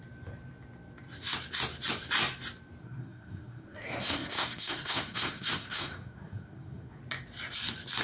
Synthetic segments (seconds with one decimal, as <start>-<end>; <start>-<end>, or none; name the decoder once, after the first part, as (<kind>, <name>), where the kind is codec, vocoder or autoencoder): 2.8-7.0 (codec, SNAC)